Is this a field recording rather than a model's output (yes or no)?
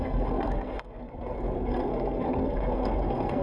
no